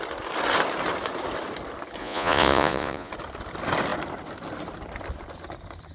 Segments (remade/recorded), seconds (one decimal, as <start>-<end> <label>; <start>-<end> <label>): 0.0-2.0 recorded; 2.0-3.1 remade; 3.1-5.9 recorded